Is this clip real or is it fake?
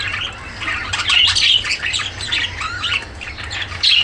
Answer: real